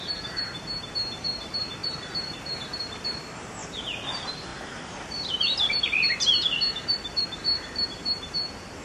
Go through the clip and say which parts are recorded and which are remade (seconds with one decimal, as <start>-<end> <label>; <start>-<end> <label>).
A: 0.0-8.8 remade